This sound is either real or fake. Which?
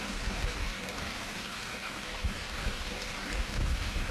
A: fake